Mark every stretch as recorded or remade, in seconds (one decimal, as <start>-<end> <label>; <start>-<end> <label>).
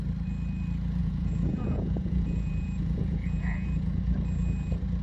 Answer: 0.0-1.0 recorded; 1.0-4.0 remade; 4.0-5.0 recorded